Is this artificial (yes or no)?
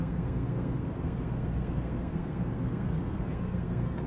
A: yes